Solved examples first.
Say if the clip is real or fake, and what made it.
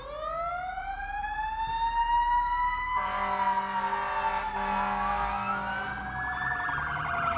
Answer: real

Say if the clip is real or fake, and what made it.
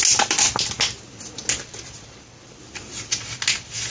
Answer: real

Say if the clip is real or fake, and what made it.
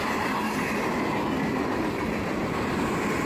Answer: real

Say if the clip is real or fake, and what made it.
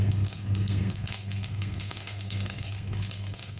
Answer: fake, codec, SNAC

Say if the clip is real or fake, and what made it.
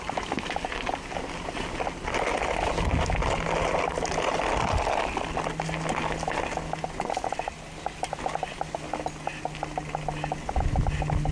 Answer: real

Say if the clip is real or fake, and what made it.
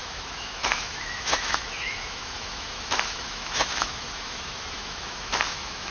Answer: fake, autoencoder, DAC-VAE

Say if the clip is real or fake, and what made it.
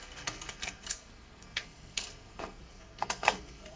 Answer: fake, codec, SNAC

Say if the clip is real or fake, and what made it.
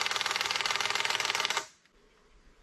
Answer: fake, vocoder, BigVGAN v2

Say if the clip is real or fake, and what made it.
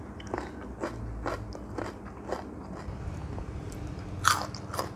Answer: real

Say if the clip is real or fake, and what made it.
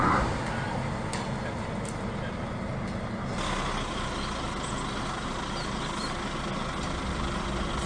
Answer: real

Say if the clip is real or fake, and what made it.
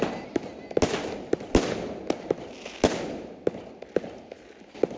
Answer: real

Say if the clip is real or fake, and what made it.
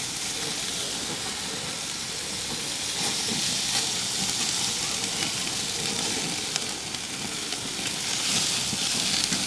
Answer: real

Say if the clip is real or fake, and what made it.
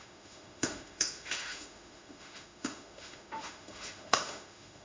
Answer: fake, autoencoder, DAC-VAE